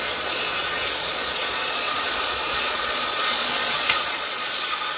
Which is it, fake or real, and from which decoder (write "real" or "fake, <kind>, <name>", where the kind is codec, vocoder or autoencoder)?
fake, vocoder, Vocos